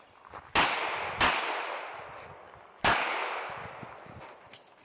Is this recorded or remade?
recorded